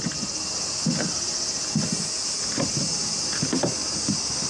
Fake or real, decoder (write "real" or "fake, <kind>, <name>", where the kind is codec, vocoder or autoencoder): real